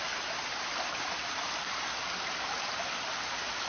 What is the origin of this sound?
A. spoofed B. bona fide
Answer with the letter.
B